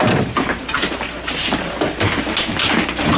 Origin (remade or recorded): recorded